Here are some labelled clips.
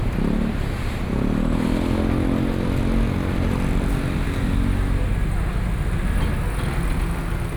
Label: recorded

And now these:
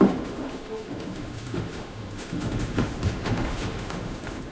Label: remade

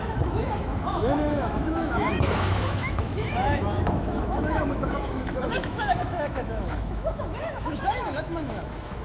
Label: remade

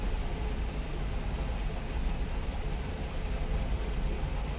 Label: recorded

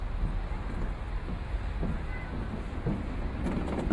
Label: recorded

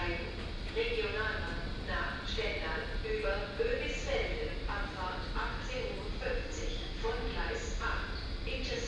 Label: recorded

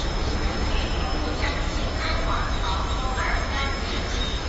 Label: remade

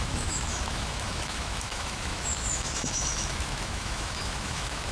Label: remade